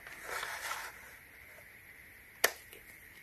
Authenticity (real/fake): real